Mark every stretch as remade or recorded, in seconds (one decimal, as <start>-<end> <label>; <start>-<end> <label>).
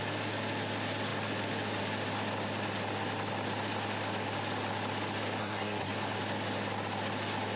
0.0-5.4 recorded; 5.4-5.9 remade; 5.9-7.6 recorded